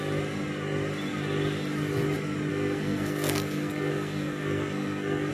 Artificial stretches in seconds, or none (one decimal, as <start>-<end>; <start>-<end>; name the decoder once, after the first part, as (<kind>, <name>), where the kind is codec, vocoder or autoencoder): 2.5-5.3 (codec, SNAC)